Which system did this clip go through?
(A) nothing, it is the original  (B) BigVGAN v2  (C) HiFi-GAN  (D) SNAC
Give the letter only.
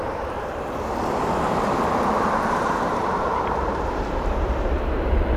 B